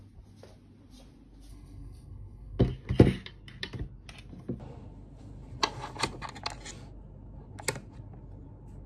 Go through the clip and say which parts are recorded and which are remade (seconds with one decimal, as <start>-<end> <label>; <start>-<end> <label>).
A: 0.0-1.5 recorded; 1.5-2.6 remade; 2.6-8.9 recorded